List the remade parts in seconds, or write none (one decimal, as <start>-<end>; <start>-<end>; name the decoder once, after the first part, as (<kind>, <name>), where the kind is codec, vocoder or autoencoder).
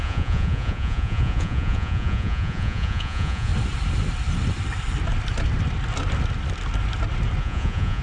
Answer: 0.0-3.5 (vocoder, Vocos); 7.4-8.0